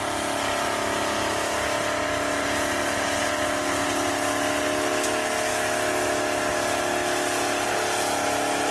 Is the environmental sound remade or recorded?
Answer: recorded